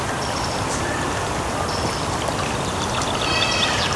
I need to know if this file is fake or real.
real